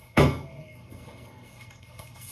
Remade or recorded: remade